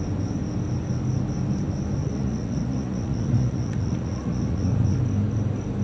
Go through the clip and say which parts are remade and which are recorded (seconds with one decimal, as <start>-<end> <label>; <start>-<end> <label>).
0.0-2.0 recorded; 2.0-5.0 remade; 5.0-5.8 recorded